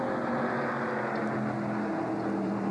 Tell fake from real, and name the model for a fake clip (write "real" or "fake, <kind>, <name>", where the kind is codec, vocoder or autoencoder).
real